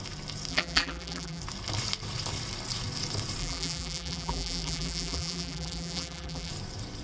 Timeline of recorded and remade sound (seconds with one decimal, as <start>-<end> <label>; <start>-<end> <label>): 0.0-0.5 recorded; 0.5-1.4 remade; 1.4-3.4 recorded; 3.4-6.5 remade; 6.5-7.0 recorded